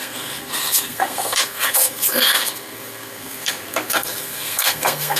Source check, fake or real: fake